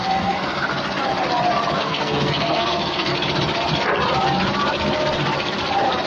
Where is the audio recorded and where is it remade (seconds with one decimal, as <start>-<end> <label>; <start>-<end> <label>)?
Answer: 0.0-0.7 remade; 0.7-1.7 recorded; 1.7-3.1 remade; 3.1-6.1 recorded